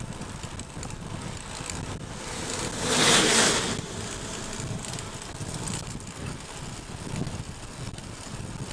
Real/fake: real